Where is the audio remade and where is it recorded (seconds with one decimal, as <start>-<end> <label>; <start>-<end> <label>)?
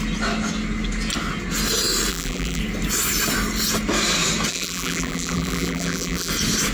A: 0.0-2.1 recorded; 2.1-2.6 remade; 2.6-4.5 recorded; 4.5-6.3 remade; 6.3-6.7 recorded